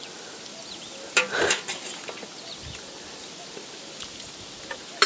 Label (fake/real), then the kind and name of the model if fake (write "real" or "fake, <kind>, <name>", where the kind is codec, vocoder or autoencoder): real